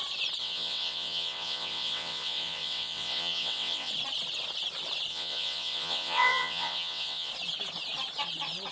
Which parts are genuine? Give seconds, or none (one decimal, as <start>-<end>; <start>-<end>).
0.0-0.4; 3.9-5.1; 7.3-8.7